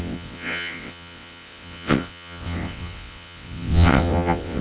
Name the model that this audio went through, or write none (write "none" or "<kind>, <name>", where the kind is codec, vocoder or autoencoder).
vocoder, WaveNeXt